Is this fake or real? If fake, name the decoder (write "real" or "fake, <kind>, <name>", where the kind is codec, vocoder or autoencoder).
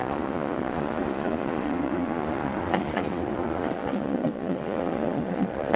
fake, vocoder, Vocos